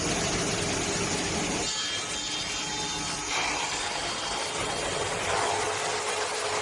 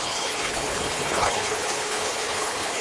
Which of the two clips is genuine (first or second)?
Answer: first